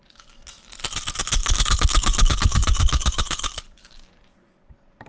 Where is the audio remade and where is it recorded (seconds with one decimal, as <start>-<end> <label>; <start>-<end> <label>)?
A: 0.0-1.4 recorded; 1.4-3.6 remade; 3.6-5.1 recorded